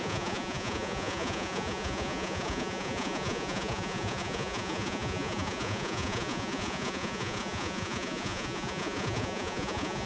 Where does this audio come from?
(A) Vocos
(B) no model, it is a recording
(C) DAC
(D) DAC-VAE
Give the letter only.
A